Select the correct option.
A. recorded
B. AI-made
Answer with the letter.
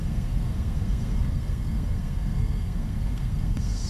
B